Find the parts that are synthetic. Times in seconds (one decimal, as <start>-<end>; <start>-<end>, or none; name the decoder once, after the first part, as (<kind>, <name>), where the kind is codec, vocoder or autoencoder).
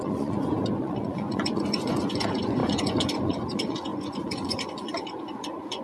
0.0-5.8 (vocoder, Vocos)